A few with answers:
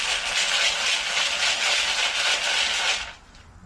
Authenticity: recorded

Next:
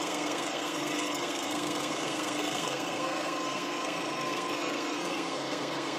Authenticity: remade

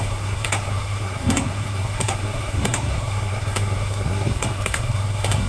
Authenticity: remade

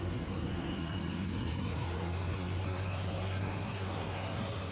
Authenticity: remade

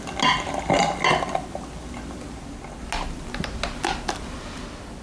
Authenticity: recorded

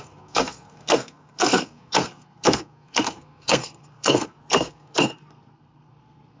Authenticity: remade